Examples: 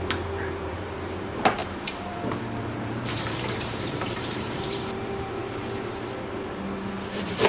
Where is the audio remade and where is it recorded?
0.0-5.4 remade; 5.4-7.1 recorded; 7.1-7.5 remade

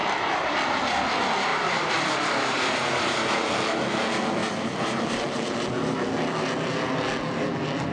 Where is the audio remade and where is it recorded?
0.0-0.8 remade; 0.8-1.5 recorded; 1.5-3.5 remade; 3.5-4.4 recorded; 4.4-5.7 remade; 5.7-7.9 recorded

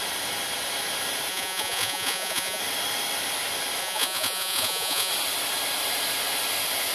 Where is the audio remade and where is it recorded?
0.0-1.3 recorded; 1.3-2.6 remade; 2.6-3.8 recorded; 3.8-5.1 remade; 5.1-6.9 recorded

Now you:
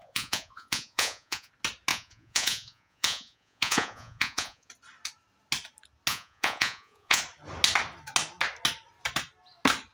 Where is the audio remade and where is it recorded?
0.0-1.5 remade; 1.5-1.9 recorded; 1.9-4.7 remade; 4.7-6.1 recorded; 6.1-7.2 remade; 7.2-9.9 recorded

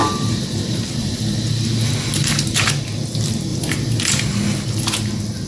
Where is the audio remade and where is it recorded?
0.0-1.2 remade; 1.2-3.5 recorded; 3.5-4.0 remade; 4.0-5.5 recorded